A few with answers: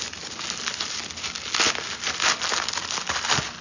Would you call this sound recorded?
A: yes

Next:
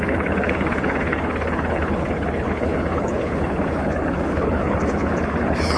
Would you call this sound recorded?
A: no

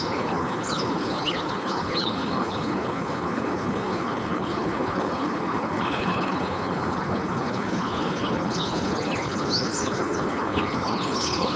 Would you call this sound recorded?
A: no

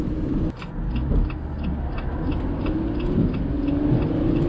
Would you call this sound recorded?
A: yes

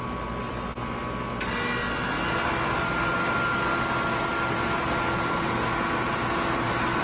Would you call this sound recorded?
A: yes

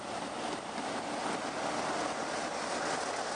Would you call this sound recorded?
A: yes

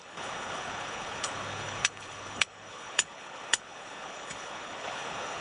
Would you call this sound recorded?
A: no